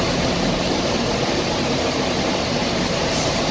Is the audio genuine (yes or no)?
no